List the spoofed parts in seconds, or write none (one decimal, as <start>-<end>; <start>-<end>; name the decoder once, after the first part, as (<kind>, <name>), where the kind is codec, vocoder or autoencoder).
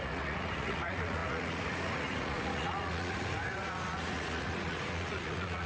0.0-5.7 (vocoder, Vocos)